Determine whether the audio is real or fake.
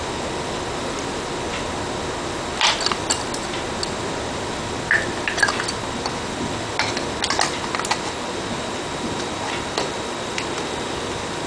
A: real